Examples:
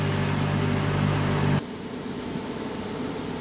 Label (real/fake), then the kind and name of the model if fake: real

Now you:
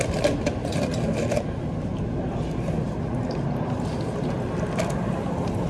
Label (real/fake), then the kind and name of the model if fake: real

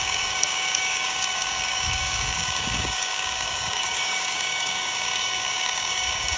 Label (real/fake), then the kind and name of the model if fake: fake, codec, DAC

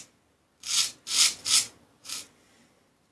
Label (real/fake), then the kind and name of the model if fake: real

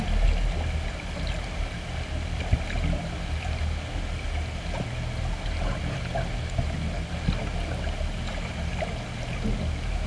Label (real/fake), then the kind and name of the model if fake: real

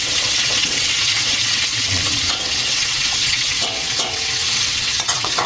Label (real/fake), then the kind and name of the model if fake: fake, vocoder, WaveNeXt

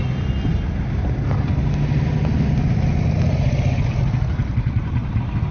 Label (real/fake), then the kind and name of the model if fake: real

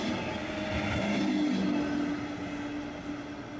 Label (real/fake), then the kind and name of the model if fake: real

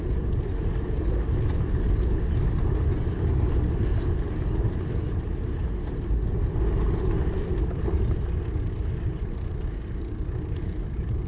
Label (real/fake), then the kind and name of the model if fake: real